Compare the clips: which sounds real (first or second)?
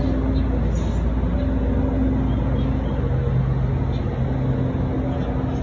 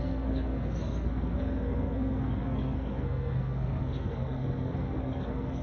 first